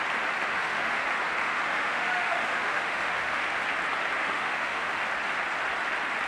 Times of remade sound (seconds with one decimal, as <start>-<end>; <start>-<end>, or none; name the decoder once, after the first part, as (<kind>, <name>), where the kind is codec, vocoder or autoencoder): 0.5-1.0 (autoencoder, DAC-VAE); 1.4-3.6; 4.2-5.0

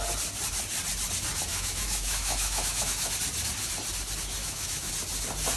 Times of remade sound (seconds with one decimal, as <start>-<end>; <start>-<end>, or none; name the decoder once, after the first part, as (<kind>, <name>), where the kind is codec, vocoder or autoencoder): 1.5-3.1 (autoencoder, DAC-VAE); 4.4-4.9

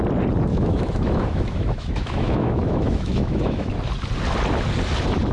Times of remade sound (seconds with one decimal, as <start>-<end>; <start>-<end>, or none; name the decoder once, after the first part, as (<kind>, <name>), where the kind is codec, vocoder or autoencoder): 0.5-3.7 (autoencoder, DAC-VAE)

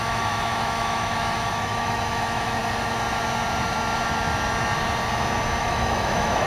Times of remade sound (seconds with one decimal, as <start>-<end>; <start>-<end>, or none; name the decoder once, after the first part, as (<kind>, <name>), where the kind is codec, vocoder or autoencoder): 0.0-2.6 (autoencoder, DAC-VAE); 5.6-6.5

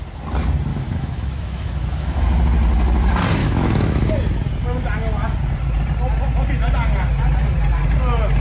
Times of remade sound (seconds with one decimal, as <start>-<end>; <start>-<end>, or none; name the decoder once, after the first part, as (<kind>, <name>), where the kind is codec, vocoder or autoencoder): 0.7-2.2 (autoencoder, DAC-VAE); 3.4-4.1

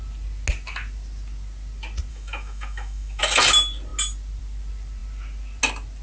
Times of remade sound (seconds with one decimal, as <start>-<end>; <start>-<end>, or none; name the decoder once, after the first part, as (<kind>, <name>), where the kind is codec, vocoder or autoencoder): 2.1-3.2 (autoencoder, DAC-VAE)

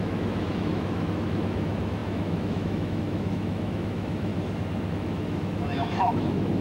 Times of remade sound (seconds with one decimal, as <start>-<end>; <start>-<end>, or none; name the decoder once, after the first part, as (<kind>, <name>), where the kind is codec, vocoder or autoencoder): 0.0-4.3 (autoencoder, DAC-VAE); 4.9-6.6

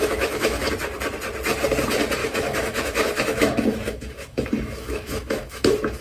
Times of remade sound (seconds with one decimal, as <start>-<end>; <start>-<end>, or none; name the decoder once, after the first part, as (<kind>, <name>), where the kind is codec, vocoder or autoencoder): 0.0-0.7 (autoencoder, DAC-VAE); 2.2-6.0